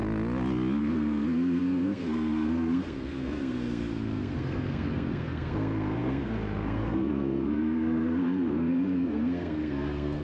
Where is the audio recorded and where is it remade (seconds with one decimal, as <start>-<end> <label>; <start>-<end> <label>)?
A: 0.0-0.8 recorded; 0.8-10.2 remade